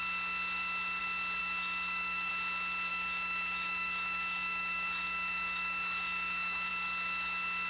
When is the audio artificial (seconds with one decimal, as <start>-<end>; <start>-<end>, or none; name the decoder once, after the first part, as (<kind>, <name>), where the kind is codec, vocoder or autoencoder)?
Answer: 1.4-2.3 (autoencoder, DAC-VAE); 2.9-6.7